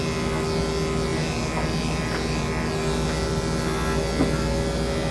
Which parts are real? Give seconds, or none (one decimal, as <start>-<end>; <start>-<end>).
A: 0.0-5.1

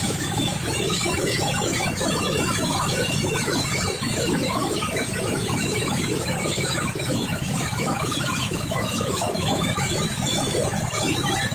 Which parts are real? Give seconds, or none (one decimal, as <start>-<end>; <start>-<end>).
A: none

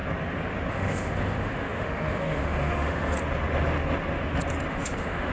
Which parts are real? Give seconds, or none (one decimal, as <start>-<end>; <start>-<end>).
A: 0.0-0.7; 3.2-4.7

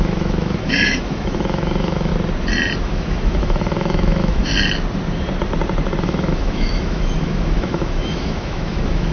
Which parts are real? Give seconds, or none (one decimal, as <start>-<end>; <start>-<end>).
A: 2.1-2.8; 4.5-6.0

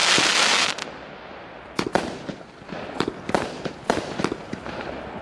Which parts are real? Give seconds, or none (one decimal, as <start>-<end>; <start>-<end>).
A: 0.0-5.2